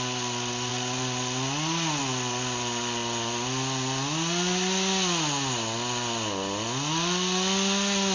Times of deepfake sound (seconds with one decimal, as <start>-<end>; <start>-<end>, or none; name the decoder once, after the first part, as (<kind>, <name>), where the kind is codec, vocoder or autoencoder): none